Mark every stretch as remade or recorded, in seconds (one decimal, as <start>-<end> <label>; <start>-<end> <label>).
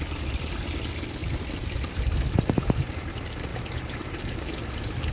0.0-1.2 recorded; 1.2-2.9 remade; 2.9-5.1 recorded